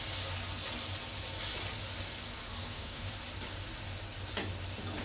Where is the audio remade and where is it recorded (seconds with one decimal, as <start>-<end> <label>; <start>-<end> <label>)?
0.0-2.6 recorded; 2.6-3.1 remade; 3.1-5.0 recorded